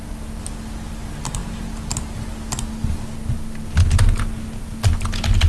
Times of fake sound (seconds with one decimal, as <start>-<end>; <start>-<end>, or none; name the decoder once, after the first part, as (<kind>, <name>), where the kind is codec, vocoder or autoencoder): none